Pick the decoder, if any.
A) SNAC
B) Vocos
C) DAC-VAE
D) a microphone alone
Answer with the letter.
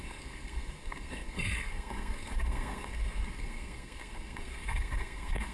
A